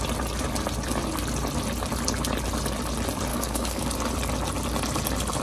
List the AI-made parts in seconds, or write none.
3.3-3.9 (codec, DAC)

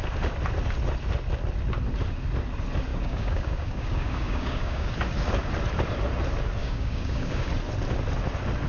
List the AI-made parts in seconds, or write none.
2.9-4.9 (codec, DAC); 6.6-7.5

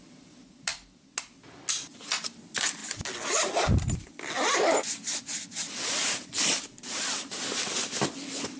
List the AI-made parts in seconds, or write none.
none

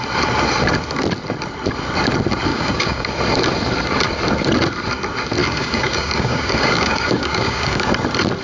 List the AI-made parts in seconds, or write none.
2.5-3.1 (codec, DAC); 5.4-7.9